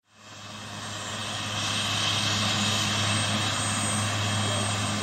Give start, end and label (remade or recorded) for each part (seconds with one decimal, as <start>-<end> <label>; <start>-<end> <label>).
0.0-5.0 recorded